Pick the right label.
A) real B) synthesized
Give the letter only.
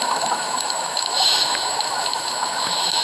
B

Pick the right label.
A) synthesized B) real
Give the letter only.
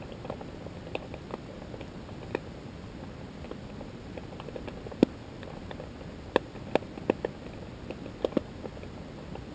B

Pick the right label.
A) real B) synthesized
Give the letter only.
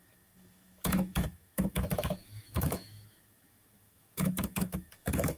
B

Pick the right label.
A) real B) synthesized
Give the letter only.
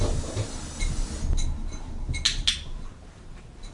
A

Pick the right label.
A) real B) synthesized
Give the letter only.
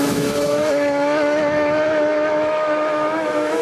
B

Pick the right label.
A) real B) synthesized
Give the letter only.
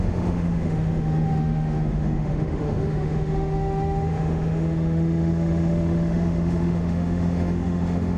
B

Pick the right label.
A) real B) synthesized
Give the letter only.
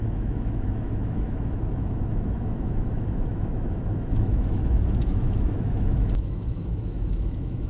B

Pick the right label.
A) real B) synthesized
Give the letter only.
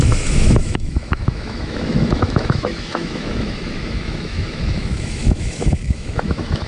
B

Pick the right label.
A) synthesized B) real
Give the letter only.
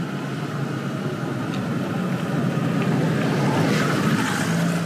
B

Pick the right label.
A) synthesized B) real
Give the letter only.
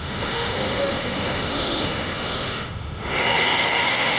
A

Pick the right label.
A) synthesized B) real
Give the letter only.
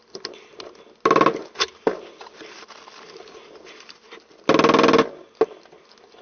B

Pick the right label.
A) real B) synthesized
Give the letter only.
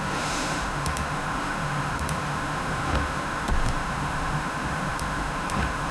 B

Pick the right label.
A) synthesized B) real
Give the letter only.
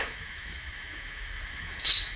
A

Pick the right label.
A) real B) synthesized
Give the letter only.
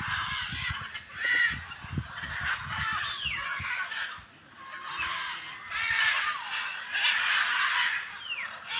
A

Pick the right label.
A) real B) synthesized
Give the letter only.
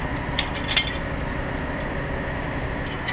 A